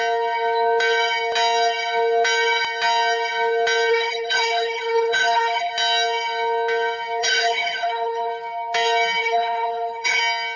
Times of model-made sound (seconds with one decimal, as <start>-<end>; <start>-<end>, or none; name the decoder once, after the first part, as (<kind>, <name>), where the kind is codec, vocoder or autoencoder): 3.9-5.7 (codec, HILCodec); 7.2-8.3; 9.2-10.2